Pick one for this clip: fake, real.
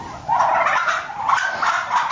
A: real